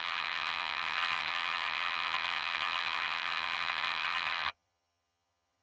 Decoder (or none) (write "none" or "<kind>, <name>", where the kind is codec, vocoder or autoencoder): vocoder, HiFi-GAN